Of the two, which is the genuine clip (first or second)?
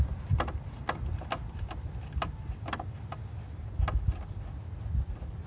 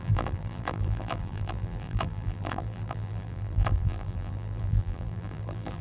first